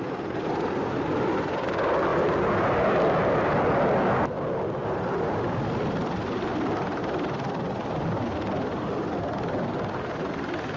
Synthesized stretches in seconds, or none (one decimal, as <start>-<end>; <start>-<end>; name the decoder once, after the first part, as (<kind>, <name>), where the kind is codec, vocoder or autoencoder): none